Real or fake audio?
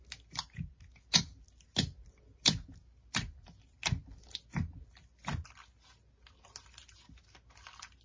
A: real